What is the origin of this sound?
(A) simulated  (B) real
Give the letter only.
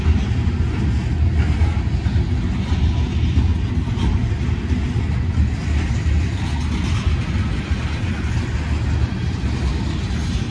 B